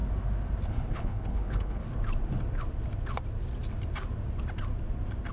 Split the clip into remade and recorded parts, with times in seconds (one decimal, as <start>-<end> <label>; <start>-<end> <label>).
0.0-0.7 recorded; 0.7-1.8 remade; 1.8-5.3 recorded